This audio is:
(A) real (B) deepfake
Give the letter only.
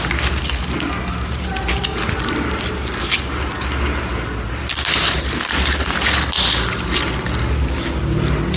A